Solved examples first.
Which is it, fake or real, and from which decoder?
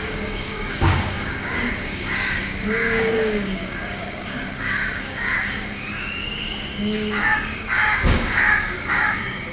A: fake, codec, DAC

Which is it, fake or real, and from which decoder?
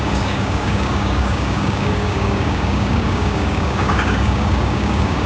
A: fake, codec, DAC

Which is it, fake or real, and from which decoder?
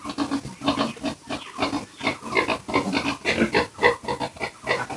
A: real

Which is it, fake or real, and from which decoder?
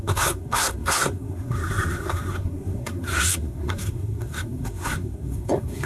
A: fake, codec, SNAC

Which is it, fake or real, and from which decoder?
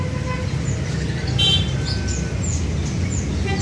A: real